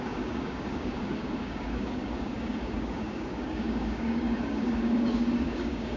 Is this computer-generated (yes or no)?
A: yes